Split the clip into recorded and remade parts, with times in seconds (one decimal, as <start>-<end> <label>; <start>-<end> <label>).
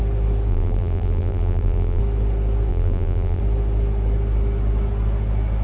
0.0-0.5 recorded; 0.5-2.0 remade; 2.0-2.7 recorded; 2.7-3.4 remade; 3.4-5.6 recorded